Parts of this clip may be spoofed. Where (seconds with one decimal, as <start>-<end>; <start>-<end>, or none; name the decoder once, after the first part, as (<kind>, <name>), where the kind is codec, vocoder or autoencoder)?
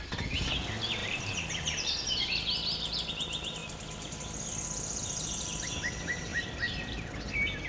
1.0-3.1 (vocoder, BigVGAN v2); 3.6-4.2; 6.3-7.1